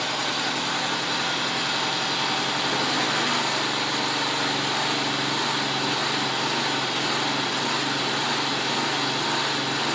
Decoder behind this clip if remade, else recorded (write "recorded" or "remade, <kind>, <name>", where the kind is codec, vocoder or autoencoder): recorded